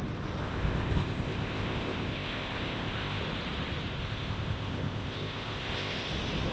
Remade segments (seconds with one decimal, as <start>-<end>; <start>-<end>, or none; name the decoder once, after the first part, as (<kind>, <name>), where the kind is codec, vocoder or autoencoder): 0.4-3.2 (codec, ZipCodec); 4.0-6.1